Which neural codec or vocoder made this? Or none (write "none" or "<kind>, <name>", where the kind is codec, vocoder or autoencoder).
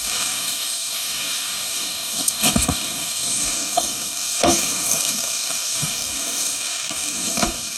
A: codec, DAC